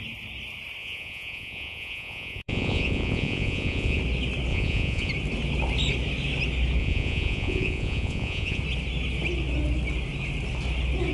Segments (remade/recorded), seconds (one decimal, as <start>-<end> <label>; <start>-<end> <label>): 0.0-0.8 recorded; 0.8-4.0 remade; 4.0-4.5 recorded; 4.5-5.1 remade; 5.1-6.8 recorded; 6.8-8.6 remade; 8.6-11.1 recorded

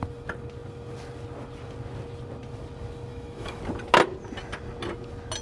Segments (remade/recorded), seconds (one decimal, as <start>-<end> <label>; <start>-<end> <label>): 0.0-3.1 recorded; 3.1-3.6 remade; 3.6-5.4 recorded

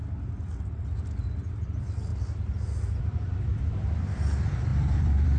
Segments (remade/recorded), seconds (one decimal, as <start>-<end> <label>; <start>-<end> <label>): 0.0-1.5 recorded; 1.5-2.1 remade; 2.1-3.0 recorded; 3.0-5.4 remade

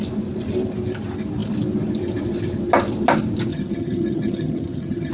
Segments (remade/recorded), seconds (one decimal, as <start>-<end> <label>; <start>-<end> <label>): 0.0-3.5 recorded; 3.5-5.1 remade